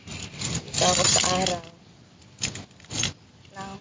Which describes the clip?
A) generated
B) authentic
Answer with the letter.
B